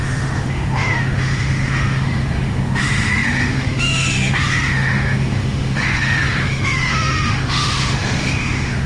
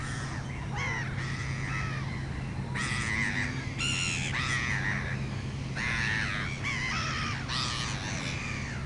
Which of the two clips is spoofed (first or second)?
first